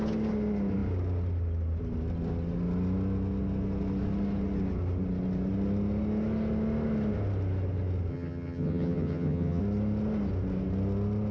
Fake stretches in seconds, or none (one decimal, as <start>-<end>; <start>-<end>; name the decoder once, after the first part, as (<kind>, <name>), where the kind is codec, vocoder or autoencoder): 8.1-9.6 (vocoder, HiFi-GAN)